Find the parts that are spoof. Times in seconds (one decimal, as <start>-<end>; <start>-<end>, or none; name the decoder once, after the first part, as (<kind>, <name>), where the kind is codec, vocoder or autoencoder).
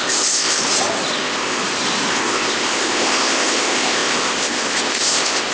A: 0.0-0.6 (codec, ZipCodec); 1.2-1.6; 2.1-5.5